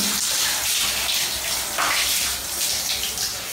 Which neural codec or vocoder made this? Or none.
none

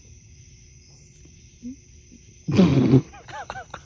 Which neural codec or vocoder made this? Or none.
none